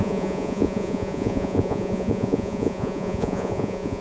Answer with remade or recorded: remade